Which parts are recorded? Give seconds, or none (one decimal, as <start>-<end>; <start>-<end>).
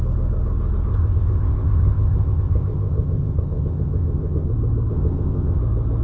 0.0-0.9; 4.5-4.9; 5.6-6.0